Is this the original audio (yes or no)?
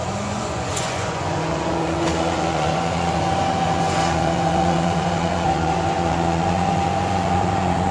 no